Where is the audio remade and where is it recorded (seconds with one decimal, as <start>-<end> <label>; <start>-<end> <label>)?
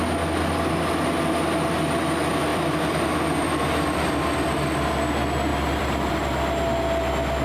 0.0-2.5 recorded; 2.5-4.1 remade; 4.1-5.5 recorded; 5.5-6.2 remade; 6.2-7.4 recorded